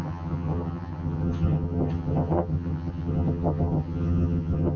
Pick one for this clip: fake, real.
fake